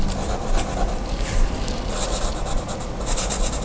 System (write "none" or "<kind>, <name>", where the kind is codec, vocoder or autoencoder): none